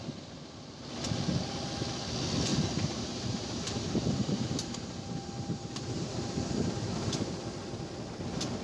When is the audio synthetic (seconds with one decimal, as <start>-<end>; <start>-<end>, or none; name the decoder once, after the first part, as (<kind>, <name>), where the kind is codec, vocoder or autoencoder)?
2.5-7.2 (vocoder, BigVGAN v2)